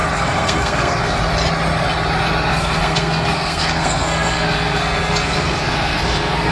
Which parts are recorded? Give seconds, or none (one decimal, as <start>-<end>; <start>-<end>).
1.2-2.5